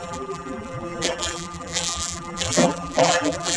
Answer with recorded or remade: remade